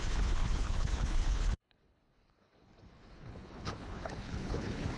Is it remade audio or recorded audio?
remade